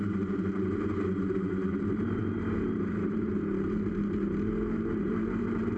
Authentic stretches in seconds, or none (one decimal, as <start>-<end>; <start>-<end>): none